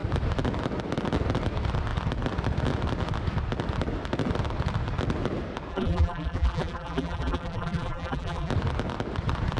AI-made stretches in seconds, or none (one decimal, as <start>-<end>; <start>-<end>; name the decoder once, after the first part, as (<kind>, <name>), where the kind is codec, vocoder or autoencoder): 5.7-8.5 (vocoder, BigVGAN v2)